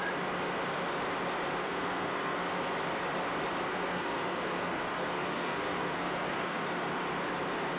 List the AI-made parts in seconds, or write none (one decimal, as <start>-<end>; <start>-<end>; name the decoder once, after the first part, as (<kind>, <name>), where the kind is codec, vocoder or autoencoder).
1.6-2.4 (codec, SNAC); 3.7-6.6